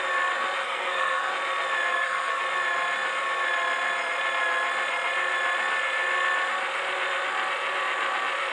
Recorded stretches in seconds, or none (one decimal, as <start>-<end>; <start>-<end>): 0.0-0.6; 1.3-1.9; 2.4-8.5